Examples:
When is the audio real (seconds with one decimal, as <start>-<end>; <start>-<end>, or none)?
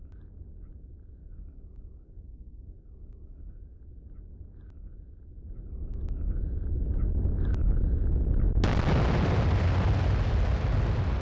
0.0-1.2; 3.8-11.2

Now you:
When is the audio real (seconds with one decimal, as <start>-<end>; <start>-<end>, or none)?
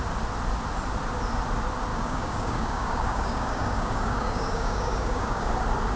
0.0-1.9; 5.5-6.0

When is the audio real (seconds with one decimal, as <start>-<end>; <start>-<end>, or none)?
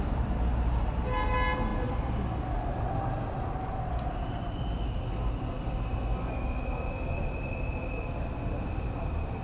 0.0-9.4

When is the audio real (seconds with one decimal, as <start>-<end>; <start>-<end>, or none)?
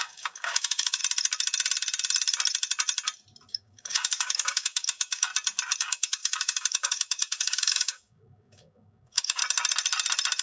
1.0-3.5; 5.3-5.8; 9.4-10.4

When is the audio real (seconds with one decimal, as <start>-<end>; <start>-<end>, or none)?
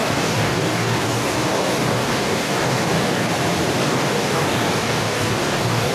3.3-3.8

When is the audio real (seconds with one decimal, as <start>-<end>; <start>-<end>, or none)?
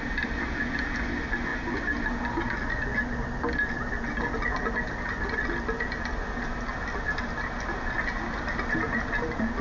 0.0-9.6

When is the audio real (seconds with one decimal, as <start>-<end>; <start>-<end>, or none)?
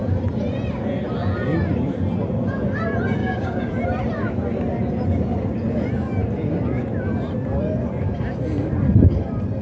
0.0-3.2; 3.7-9.6